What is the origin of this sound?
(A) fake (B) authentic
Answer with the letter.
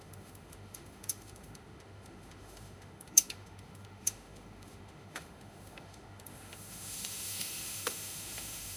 A